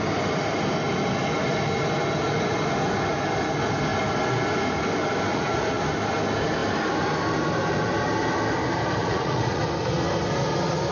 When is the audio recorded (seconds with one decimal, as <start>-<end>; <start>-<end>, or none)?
0.0-5.3; 5.8-9.0; 9.6-10.9